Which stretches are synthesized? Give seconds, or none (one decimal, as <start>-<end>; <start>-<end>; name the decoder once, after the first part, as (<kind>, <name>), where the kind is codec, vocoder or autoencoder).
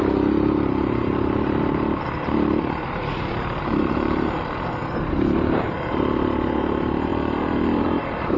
0.0-8.4 (vocoder, BigVGAN v2)